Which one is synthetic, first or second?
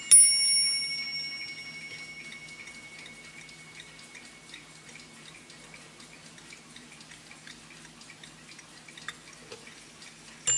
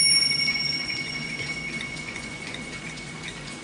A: second